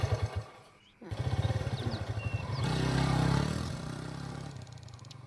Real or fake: fake